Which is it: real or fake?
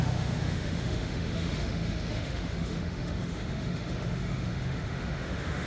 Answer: fake